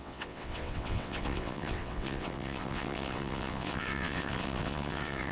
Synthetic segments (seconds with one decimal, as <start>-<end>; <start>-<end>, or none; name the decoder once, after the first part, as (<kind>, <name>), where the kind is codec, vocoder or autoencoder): 0.0-5.3 (vocoder, WaveNeXt)